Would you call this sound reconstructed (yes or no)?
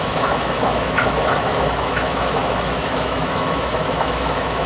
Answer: yes